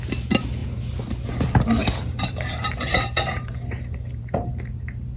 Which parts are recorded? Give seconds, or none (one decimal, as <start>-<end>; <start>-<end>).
0.0-1.8; 4.5-5.2